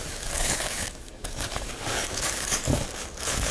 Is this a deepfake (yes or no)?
yes